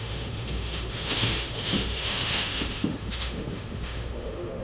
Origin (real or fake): fake